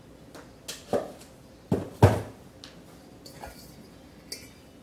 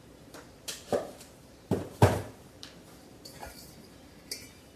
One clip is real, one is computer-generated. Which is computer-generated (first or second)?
second